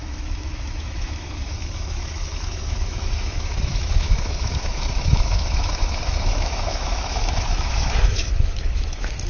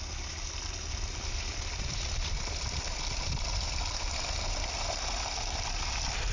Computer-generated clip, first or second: first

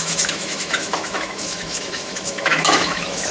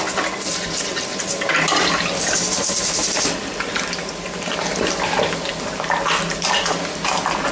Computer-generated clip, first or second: first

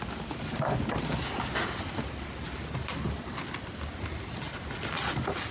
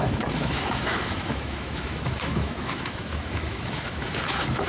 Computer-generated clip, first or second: second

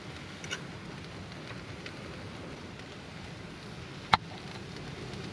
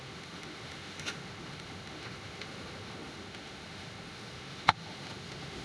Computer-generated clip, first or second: second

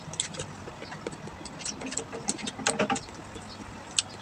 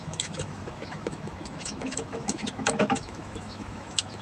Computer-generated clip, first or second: second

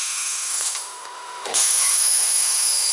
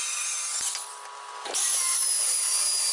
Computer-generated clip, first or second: first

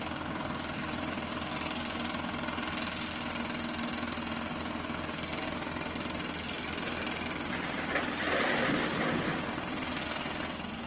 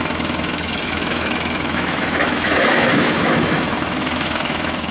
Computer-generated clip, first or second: second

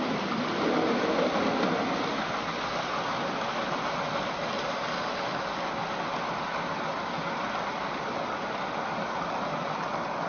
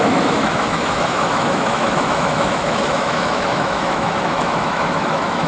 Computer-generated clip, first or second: second